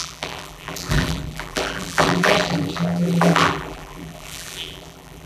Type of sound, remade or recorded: remade